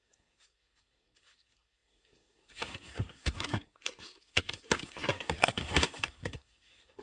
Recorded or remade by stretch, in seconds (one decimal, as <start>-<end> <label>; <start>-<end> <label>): 0.0-7.0 remade